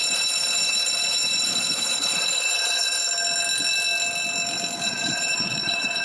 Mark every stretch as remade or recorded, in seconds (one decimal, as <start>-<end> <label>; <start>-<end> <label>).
0.0-3.0 remade; 3.0-4.8 recorded; 4.8-6.0 remade